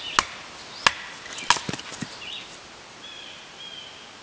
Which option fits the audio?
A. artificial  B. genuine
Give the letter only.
B